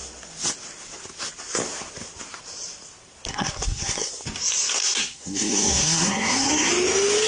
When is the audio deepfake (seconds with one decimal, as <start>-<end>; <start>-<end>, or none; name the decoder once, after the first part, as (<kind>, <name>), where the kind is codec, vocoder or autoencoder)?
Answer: 3.3-4.1 (codec, SNAC); 4.8-6.7